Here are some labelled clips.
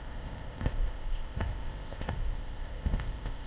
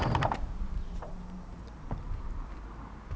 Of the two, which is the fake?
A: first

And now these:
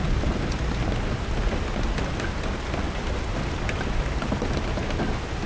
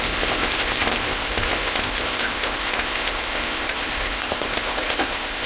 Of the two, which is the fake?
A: second